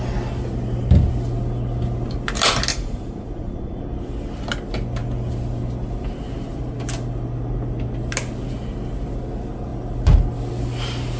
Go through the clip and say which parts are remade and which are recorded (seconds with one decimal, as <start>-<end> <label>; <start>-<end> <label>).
0.0-2.7 recorded; 2.7-3.8 remade; 3.8-11.2 recorded